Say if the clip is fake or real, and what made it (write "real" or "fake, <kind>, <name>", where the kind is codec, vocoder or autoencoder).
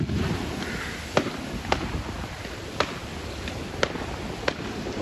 fake, vocoder, BigVGAN v2